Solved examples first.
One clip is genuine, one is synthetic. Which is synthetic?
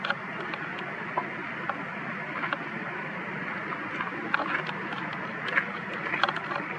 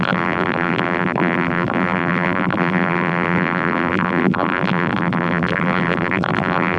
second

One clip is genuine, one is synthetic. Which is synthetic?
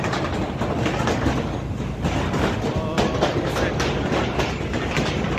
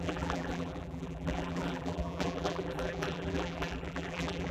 second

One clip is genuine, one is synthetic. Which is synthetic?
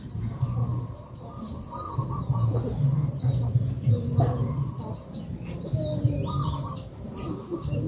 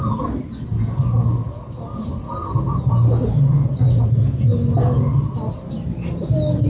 first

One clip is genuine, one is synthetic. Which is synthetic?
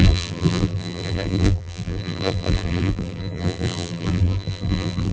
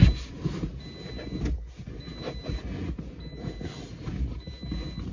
first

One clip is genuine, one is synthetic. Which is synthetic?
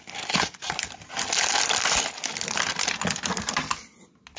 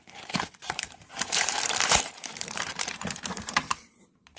second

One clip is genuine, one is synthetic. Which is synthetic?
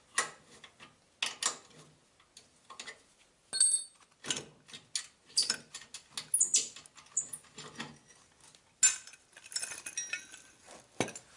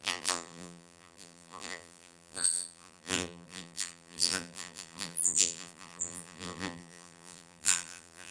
second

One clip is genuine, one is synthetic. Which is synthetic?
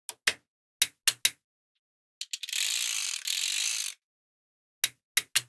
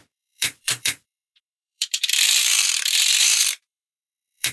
second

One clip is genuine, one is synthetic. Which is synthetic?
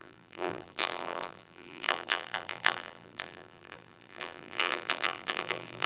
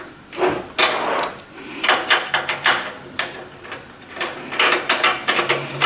first